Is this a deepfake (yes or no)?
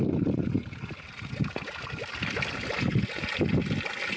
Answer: no